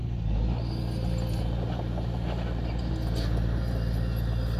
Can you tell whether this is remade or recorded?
recorded